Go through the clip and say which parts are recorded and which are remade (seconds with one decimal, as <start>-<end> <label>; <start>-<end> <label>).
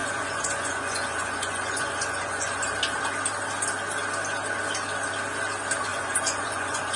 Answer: 0.0-2.6 remade; 2.6-5.9 recorded; 5.9-7.0 remade